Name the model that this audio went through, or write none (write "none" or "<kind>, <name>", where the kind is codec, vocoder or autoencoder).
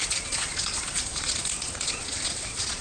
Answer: vocoder, Vocos